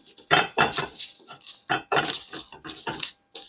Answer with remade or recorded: remade